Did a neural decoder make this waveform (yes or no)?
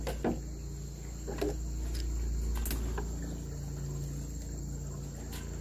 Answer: no